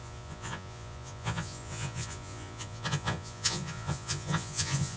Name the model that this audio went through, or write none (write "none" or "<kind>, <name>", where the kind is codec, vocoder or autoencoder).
vocoder, Vocos